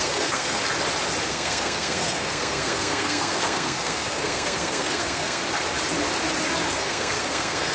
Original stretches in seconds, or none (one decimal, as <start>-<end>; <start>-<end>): 0.6-1.3; 5.4-6.7